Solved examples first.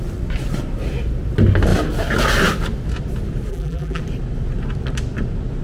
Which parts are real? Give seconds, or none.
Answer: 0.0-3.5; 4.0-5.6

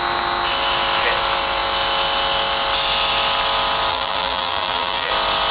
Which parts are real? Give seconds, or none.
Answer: 0.0-3.9; 5.1-5.5

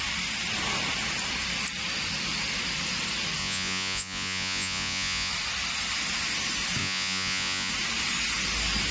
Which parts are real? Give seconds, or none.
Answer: 0.0-3.4; 5.3-6.8; 7.7-8.9

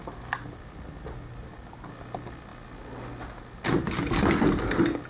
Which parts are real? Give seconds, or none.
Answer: 0.0-5.1

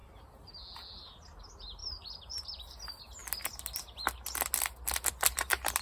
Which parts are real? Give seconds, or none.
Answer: 0.5-1.8; 2.7-5.8